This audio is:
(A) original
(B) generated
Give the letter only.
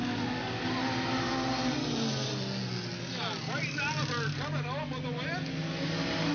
A